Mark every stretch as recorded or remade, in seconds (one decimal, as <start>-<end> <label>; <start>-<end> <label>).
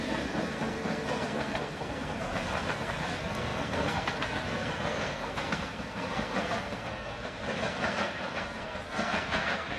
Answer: 0.0-9.8 remade